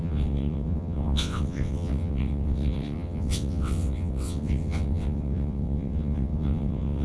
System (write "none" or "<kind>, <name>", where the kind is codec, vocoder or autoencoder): vocoder, WaveNeXt